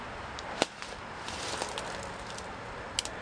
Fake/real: real